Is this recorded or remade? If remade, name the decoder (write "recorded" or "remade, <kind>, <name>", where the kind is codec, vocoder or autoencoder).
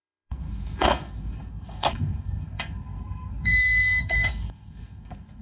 remade, codec, SNAC